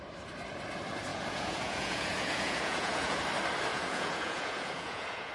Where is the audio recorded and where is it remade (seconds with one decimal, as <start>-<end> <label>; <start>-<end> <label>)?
0.0-1.1 recorded; 1.1-3.2 remade; 3.2-3.7 recorded; 3.7-5.3 remade